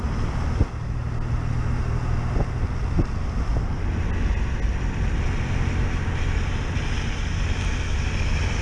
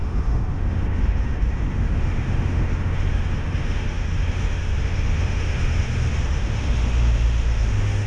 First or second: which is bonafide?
first